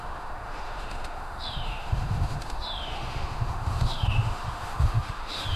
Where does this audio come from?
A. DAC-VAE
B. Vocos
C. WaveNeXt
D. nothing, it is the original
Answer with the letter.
A